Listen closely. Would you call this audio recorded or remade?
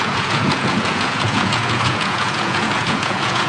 remade